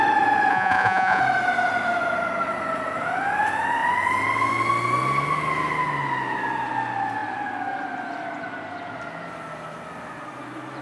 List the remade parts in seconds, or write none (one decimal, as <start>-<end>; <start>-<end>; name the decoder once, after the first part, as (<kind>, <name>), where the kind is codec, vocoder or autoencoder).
0.5-1.2 (vocoder, Vocos)